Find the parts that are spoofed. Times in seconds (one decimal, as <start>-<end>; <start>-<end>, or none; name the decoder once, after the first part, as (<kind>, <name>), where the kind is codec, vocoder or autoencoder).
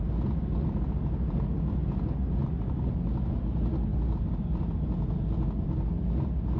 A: none